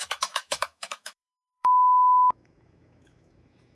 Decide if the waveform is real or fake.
fake